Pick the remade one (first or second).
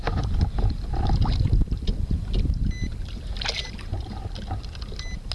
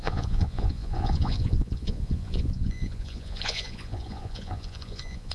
second